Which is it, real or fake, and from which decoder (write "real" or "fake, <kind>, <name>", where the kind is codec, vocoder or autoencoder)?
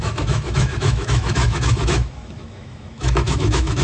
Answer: fake, autoencoder, DAC-VAE